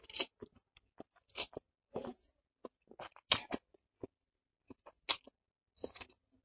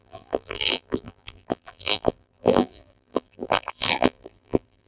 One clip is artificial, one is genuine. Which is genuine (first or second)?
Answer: first